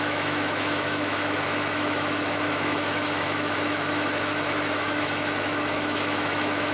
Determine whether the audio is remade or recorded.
remade